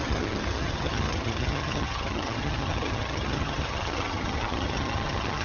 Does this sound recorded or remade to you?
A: remade